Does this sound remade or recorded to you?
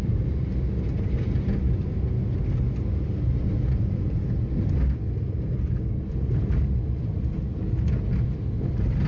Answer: recorded